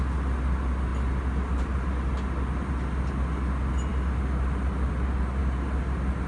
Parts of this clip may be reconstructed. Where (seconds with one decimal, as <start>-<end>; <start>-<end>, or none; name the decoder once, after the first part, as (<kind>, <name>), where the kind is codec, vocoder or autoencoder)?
none